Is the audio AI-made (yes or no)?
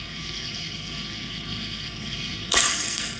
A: yes